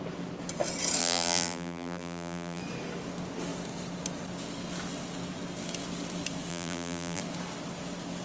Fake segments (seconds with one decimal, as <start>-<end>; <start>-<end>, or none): 1.0-2.6; 6.5-7.2